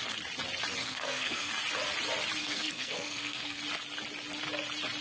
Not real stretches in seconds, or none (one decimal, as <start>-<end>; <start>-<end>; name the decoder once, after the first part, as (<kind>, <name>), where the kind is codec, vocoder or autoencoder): 0.8-1.5 (codec, SNAC); 2.4-3.6